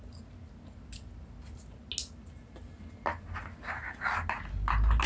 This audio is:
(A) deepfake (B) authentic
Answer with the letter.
B